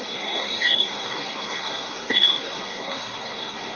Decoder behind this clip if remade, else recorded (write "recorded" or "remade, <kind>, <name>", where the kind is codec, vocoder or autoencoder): remade, codec, SNAC